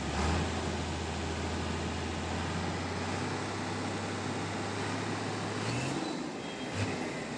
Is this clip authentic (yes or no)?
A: yes